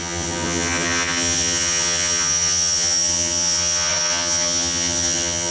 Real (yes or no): no